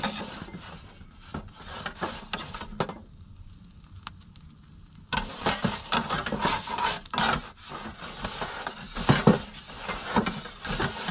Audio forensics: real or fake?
real